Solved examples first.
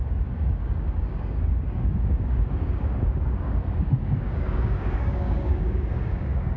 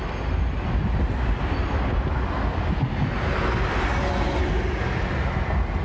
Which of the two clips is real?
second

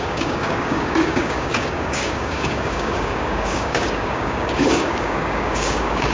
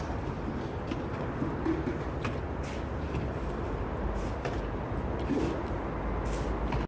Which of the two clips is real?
second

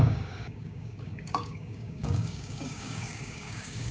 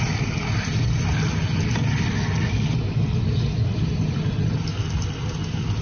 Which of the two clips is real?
second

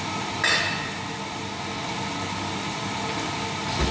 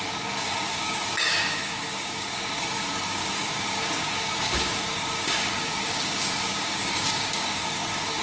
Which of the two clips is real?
first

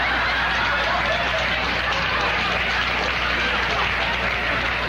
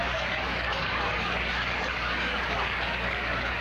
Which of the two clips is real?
first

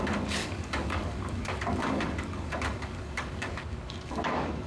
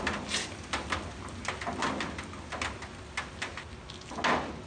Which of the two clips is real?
second